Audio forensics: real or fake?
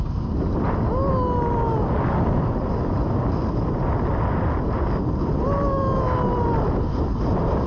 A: real